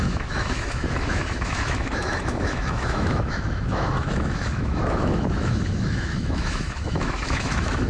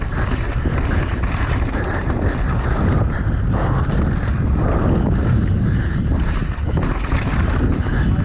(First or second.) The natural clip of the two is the second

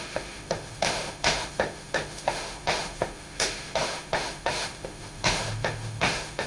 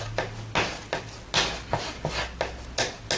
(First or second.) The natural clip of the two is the second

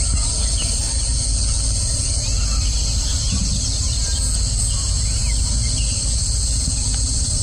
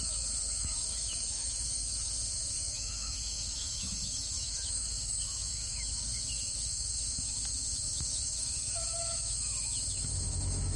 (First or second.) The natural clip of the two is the first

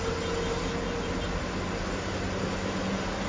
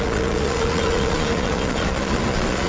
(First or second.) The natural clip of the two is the first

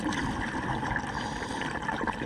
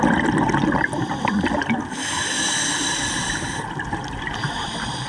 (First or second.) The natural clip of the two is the first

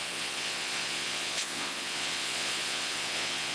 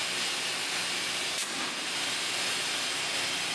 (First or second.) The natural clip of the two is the second